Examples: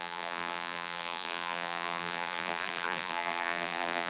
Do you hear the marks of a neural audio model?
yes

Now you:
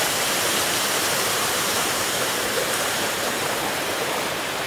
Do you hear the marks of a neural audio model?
yes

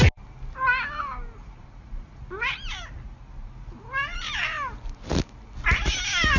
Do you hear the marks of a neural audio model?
no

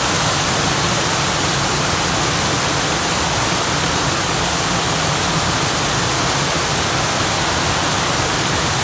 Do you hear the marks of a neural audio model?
no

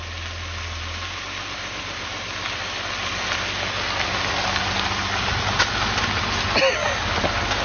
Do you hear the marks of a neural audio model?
no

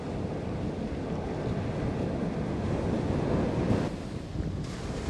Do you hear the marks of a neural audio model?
no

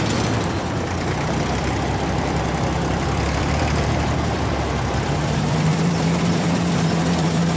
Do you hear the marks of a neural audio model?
yes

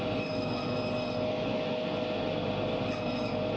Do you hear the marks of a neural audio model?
no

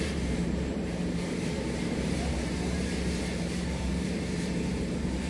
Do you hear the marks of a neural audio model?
yes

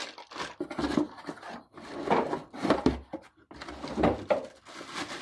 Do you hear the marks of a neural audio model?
no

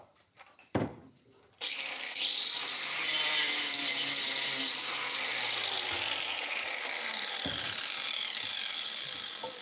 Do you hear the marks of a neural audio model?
yes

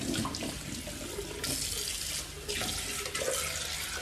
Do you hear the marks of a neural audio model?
no